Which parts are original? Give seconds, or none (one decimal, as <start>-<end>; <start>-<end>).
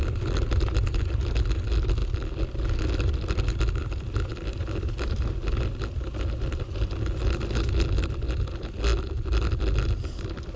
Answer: 0.0-10.6